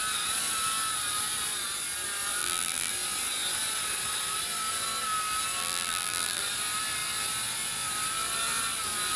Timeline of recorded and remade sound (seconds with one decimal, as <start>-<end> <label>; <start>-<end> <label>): 0.0-2.4 recorded; 2.4-2.9 remade; 2.9-5.6 recorded; 5.6-6.4 remade; 6.4-9.2 recorded